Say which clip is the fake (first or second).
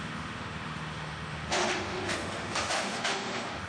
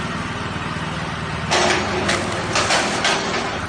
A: first